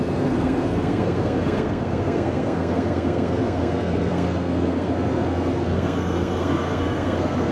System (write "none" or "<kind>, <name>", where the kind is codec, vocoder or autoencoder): codec, SNAC